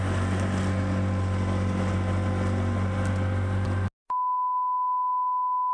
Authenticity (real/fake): real